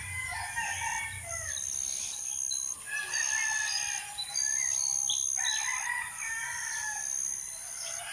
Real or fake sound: real